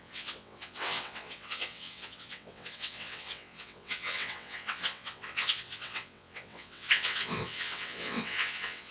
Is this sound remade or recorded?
remade